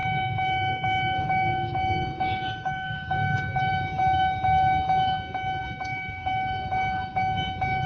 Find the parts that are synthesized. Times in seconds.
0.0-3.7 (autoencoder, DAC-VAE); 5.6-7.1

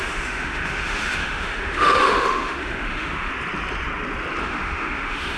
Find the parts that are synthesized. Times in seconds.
0.0-3.3 (autoencoder, DAC-VAE); 4.4-5.4

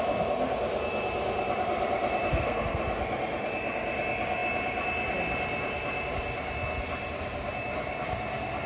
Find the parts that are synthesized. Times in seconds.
2.3-2.8 (codec, SNAC)

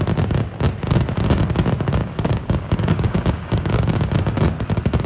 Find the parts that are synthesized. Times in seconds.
2.0-4.1 (codec, DAC)

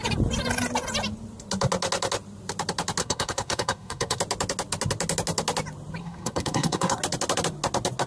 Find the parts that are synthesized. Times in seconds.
3.0-4.2 (codec, SNAC); 6.0-7.0

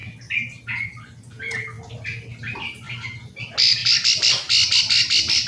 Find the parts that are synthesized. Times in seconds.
none

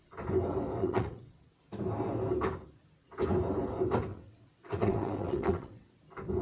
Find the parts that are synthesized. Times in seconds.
0.8-1.6 (vocoder, WaveNeXt); 4.1-6.0